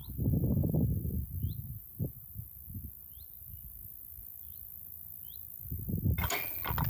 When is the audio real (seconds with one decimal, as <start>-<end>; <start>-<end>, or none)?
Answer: 0.0-6.9

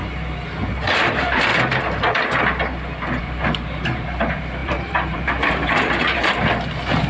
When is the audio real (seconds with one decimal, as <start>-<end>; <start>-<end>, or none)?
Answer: 0.0-0.7; 1.5-3.2